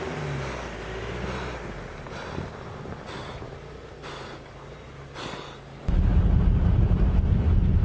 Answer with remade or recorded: recorded